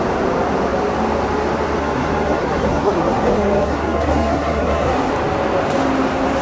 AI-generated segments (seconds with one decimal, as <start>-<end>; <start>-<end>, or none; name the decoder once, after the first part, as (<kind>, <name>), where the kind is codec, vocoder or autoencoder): 1.8-5.1 (codec, SNAC)